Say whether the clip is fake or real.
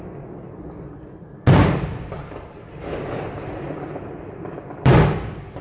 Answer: real